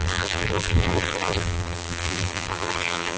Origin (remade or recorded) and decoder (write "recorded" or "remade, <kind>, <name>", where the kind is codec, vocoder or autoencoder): remade, vocoder, BigVGAN v2